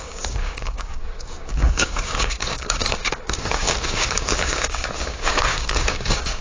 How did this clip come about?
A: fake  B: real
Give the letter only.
A